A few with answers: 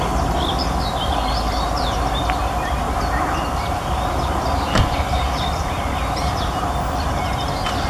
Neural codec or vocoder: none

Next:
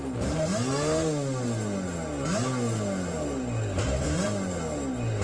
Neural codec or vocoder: none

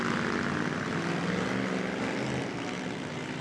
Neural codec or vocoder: none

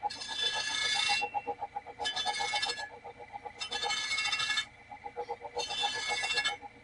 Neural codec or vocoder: none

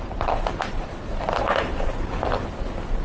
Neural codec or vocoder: none